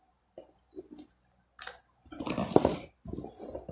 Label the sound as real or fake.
real